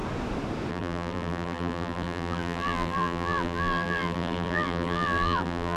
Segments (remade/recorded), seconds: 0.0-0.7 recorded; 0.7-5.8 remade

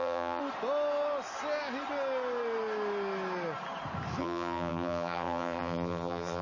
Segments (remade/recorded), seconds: 0.0-0.4 remade; 0.4-4.2 recorded; 4.2-6.4 remade

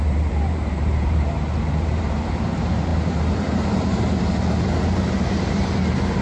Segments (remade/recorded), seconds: 0.0-6.2 remade

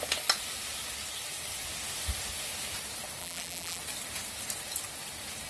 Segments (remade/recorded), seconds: 0.0-3.2 recorded; 3.2-3.8 remade; 3.8-5.5 recorded

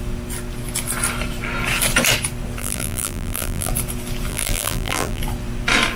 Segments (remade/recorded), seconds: 0.0-2.6 recorded; 2.6-3.7 remade; 3.7-4.3 recorded; 4.3-5.2 remade; 5.2-6.0 recorded

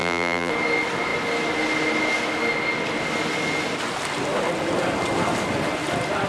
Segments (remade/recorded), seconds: 0.0-0.5 remade; 0.5-6.3 recorded